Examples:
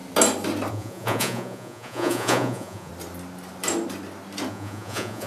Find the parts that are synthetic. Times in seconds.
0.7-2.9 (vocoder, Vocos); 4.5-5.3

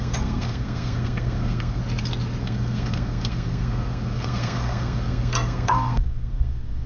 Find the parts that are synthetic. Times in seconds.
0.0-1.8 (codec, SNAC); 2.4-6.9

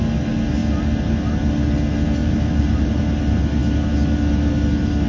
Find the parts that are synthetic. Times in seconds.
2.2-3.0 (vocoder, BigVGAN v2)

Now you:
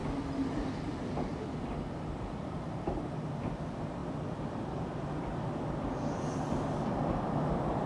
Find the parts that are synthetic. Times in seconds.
none

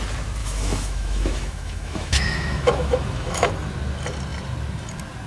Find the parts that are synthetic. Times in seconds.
0.4-3.5 (autoencoder, DAC-VAE)

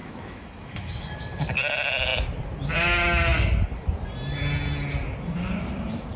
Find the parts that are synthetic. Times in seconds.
0.0-1.0 (autoencoder, DAC-VAE)